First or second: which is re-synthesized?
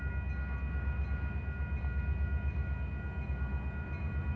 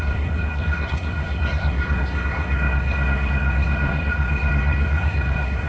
second